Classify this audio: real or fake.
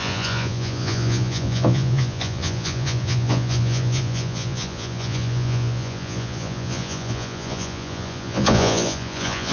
fake